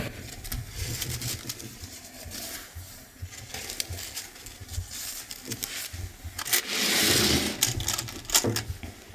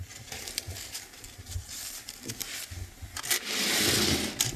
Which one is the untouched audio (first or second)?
first